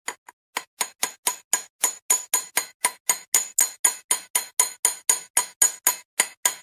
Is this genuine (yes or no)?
yes